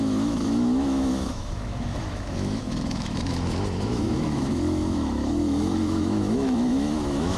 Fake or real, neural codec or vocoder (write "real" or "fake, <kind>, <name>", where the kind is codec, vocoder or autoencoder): fake, autoencoder, DAC-VAE